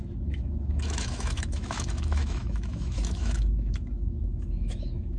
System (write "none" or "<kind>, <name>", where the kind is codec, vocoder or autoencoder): autoencoder, DAC-VAE